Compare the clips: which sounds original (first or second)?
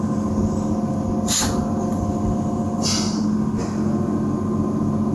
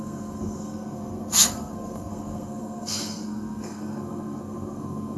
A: first